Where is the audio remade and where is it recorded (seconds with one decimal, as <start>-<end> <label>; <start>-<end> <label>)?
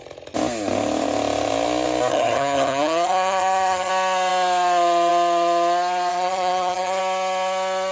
0.0-2.1 recorded; 2.1-3.9 remade; 3.9-6.1 recorded; 6.1-7.0 remade; 7.0-7.9 recorded